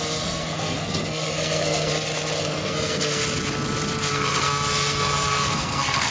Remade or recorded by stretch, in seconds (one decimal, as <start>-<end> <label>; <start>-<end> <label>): 0.0-1.9 remade; 1.9-2.4 recorded; 2.4-3.2 remade; 3.2-4.1 recorded; 4.1-6.1 remade